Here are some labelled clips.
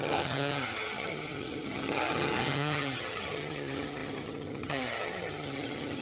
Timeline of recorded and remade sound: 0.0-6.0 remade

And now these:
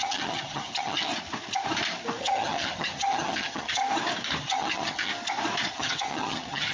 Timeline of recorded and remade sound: 0.0-1.1 remade; 1.1-2.2 recorded; 2.2-3.8 remade; 3.8-4.4 recorded; 4.4-5.1 remade; 5.1-5.7 recorded; 5.7-6.7 remade

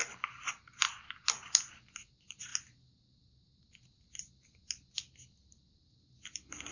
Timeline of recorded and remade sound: 0.0-6.7 recorded

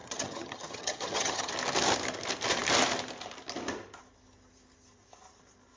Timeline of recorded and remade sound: 0.0-1.5 remade; 1.5-5.8 recorded